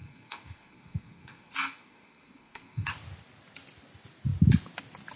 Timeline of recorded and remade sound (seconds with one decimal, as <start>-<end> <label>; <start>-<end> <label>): 0.0-2.9 remade; 2.9-5.2 recorded